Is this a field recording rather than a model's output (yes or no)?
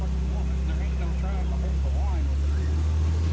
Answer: yes